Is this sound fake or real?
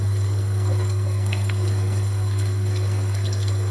fake